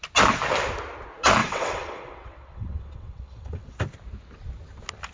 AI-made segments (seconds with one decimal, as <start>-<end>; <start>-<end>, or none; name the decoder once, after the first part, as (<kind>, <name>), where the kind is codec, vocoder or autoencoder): 1.4-3.8 (vocoder, WaveNeXt)